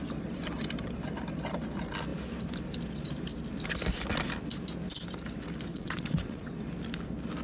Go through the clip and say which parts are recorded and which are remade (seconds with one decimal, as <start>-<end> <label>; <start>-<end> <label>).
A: 0.0-5.7 recorded; 5.7-6.5 remade; 6.5-7.4 recorded